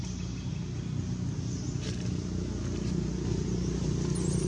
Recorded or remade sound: recorded